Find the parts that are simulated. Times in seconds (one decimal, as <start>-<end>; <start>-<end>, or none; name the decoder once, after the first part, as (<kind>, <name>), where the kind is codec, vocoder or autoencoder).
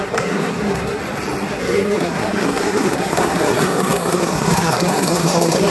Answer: 0.0-1.0 (codec, SNAC); 1.5-5.7